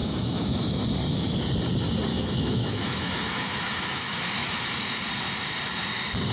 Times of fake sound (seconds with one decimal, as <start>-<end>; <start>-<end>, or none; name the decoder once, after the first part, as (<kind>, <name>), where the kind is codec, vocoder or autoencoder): 0.0-0.8 (autoencoder, DAC-VAE); 2.1-5.0